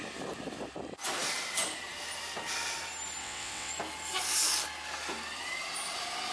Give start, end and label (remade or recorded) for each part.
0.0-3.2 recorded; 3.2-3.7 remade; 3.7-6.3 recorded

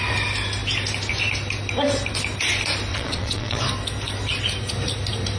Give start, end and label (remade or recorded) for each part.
0.0-2.9 recorded; 2.9-3.6 remade; 3.6-5.4 recorded

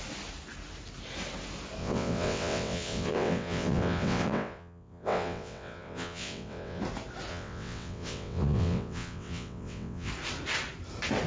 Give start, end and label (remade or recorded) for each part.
0.0-1.8 recorded; 1.8-6.8 remade; 6.8-7.3 recorded; 7.3-10.1 remade; 10.1-11.3 recorded

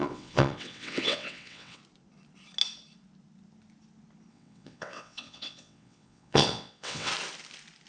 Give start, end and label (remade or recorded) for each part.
0.0-1.8 remade; 1.8-4.3 recorded; 4.3-7.1 remade; 7.1-7.9 recorded

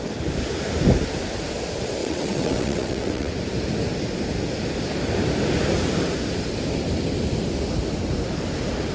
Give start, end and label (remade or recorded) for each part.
0.0-2.0 recorded; 2.0-3.3 remade; 3.3-8.9 recorded

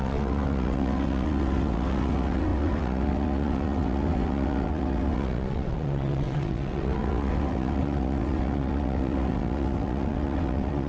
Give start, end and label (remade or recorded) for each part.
0.0-10.9 remade